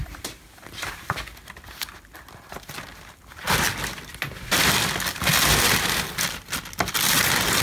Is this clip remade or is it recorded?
recorded